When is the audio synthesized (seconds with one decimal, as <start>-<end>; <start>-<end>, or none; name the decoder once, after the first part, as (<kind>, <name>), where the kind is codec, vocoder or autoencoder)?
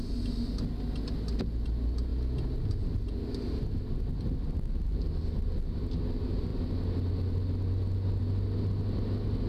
none